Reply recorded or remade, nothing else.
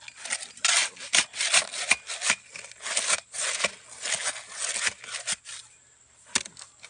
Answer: recorded